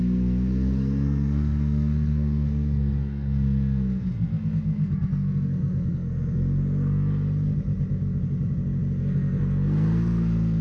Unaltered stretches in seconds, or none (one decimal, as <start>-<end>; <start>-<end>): 7.1-9.0